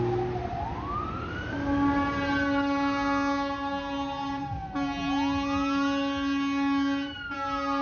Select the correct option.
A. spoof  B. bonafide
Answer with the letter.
B